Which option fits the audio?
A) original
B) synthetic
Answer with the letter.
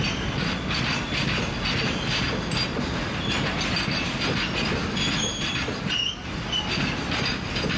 A